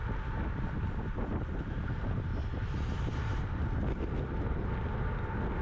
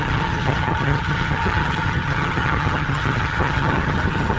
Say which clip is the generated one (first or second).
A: second